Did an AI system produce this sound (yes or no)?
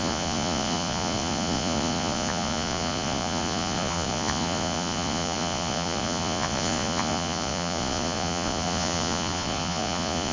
yes